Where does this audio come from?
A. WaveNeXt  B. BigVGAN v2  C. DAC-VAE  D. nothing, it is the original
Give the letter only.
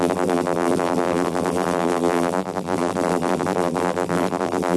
B